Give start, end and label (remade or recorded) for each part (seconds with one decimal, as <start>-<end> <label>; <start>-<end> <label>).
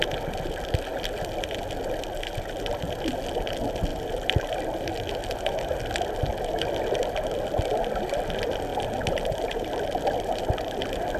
0.0-3.9 recorded; 3.9-5.9 remade; 5.9-8.7 recorded; 8.7-10.4 remade; 10.4-11.2 recorded